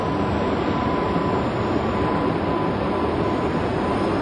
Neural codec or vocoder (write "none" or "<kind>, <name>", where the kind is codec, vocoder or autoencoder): none